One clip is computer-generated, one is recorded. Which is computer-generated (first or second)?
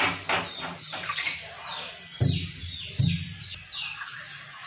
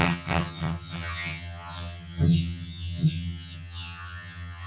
second